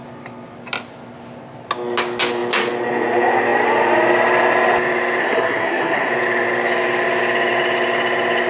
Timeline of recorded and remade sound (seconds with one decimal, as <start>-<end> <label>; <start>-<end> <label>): 0.0-5.2 recorded; 5.2-6.1 remade; 6.1-8.5 recorded